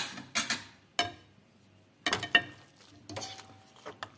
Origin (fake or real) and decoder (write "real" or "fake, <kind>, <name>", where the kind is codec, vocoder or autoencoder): real